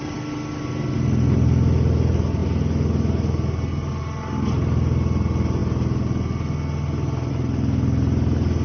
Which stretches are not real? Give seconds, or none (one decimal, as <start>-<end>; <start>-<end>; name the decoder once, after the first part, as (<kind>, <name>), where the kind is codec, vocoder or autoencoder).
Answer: none